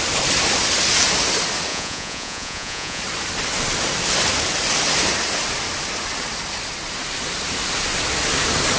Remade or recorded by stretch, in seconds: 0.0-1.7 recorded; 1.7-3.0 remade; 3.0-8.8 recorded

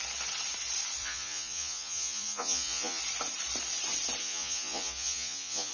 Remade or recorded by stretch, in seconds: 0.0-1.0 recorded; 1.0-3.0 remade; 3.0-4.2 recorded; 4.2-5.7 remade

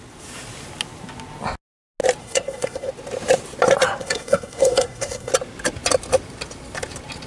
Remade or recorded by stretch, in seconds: 0.0-2.2 recorded; 2.2-2.9 remade; 2.9-4.0 recorded; 4.0-5.3 remade; 5.3-7.3 recorded

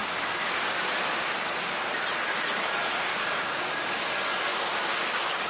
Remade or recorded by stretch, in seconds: 0.0-0.6 remade; 0.6-3.1 recorded; 3.1-4.0 remade; 4.0-4.5 recorded; 4.5-5.5 remade

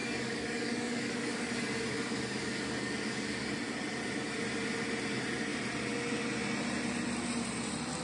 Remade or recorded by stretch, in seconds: 0.0-1.5 remade; 1.5-1.9 recorded; 1.9-3.5 remade; 3.5-8.0 recorded

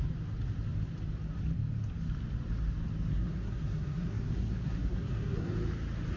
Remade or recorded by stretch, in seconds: 0.0-3.1 recorded; 3.1-5.5 remade; 5.5-6.2 recorded

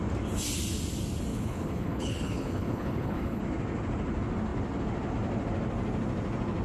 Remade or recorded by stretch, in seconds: 0.0-1.3 recorded; 1.3-3.4 remade; 3.4-6.6 recorded